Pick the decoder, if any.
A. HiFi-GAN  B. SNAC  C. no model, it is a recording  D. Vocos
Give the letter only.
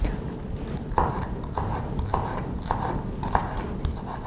C